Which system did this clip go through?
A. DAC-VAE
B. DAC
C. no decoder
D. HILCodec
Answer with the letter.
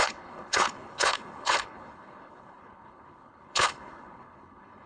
D